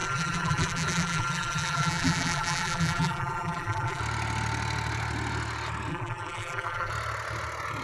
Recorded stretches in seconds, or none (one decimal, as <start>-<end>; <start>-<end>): 4.0-5.9; 6.9-7.8